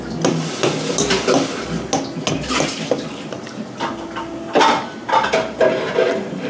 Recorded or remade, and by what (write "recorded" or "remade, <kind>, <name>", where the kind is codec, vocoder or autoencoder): recorded